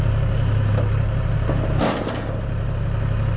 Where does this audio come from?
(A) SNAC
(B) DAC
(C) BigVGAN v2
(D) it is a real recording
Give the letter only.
D